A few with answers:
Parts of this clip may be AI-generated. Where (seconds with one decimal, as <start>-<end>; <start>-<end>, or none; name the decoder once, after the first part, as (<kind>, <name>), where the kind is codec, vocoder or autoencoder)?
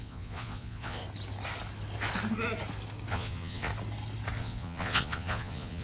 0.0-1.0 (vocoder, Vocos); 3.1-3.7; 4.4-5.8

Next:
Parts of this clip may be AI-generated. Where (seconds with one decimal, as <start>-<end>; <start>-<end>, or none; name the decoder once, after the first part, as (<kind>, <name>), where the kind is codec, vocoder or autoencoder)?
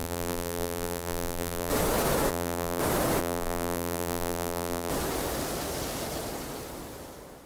0.0-1.7 (vocoder, BigVGAN v2); 2.3-2.8; 3.2-4.9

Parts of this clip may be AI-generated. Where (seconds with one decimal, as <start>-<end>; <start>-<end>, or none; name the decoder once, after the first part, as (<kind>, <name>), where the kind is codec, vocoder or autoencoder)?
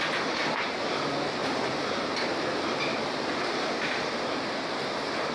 0.4-0.9 (vocoder, BigVGAN v2); 1.4-4.6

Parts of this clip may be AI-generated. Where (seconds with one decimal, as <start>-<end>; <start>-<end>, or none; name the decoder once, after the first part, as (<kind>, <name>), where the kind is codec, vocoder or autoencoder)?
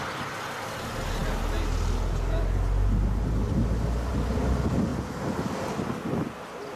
none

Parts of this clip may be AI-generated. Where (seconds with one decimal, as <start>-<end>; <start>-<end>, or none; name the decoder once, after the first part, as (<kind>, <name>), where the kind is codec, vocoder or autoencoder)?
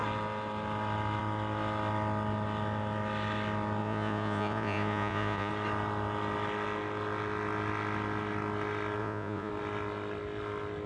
3.8-5.5 (vocoder, Vocos); 9.0-9.5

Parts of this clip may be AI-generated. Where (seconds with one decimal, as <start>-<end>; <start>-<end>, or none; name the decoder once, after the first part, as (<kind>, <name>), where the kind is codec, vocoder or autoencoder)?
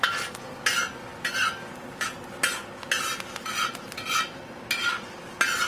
none